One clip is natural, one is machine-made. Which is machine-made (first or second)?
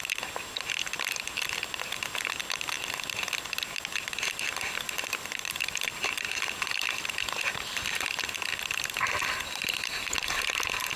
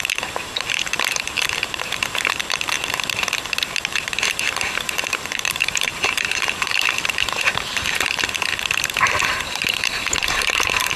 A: second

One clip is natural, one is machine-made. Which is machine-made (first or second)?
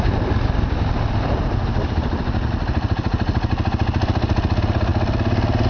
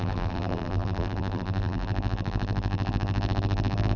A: second